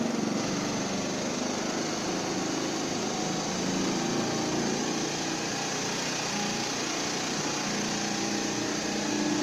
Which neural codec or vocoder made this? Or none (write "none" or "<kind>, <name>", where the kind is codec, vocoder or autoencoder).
none